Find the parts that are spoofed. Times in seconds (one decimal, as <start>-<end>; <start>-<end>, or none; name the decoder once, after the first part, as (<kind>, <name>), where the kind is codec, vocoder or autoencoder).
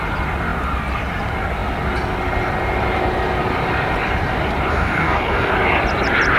4.7-5.5 (codec, DAC)